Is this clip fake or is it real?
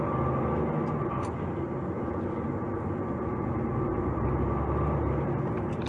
real